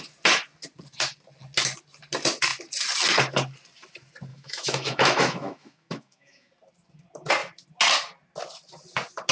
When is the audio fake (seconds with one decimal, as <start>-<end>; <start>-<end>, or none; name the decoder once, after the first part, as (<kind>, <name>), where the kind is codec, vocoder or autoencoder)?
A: 4.3-6.5 (autoencoder, DAC-VAE)